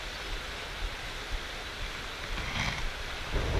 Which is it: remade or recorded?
recorded